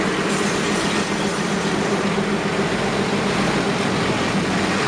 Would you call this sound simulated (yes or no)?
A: no